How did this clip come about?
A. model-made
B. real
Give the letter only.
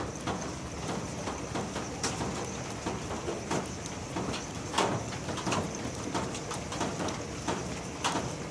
B